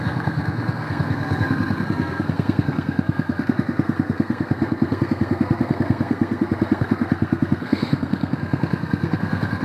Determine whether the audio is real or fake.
fake